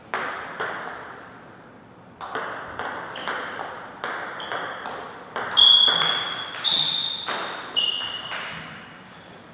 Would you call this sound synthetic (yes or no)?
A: no